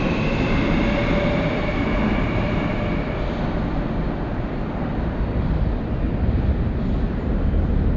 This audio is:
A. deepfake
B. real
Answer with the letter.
B